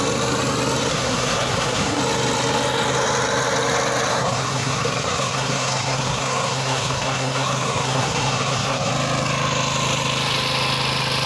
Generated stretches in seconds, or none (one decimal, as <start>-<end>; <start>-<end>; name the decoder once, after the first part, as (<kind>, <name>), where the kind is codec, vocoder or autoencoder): 0.9-2.0 (codec, SNAC); 4.1-8.9